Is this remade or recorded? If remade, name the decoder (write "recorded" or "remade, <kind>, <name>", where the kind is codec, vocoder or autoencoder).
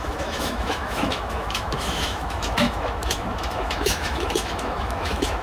remade, autoencoder, DAC-VAE